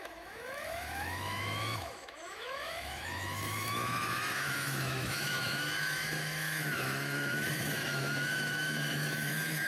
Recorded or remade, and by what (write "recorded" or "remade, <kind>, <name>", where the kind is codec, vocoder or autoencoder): remade, autoencoder, DAC-VAE